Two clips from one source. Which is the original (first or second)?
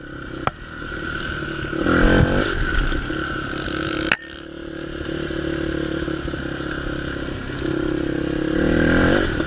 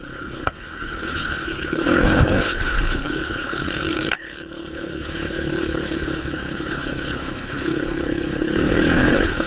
first